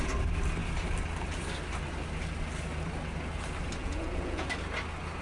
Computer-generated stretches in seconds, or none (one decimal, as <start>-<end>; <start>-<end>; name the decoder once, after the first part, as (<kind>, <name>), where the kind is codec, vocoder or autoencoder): 3.8-4.5 (vocoder, Vocos)